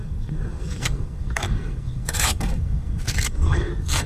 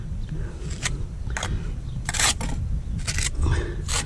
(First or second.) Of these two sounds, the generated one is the first